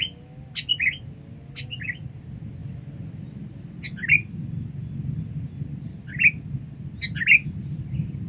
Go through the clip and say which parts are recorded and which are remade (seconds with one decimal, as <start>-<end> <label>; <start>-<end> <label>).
0.0-8.3 recorded